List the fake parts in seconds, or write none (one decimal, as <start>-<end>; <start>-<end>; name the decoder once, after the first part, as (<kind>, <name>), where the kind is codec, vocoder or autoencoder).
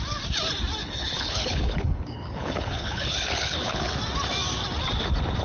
0.8-4.0 (codec, HILCodec)